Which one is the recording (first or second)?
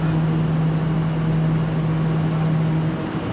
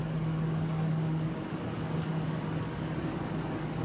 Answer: first